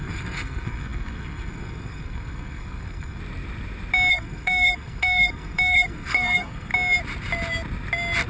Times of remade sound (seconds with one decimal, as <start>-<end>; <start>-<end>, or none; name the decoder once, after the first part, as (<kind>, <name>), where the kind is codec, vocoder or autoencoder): 0.0-3.2 (codec, SNAC); 4.1-6.7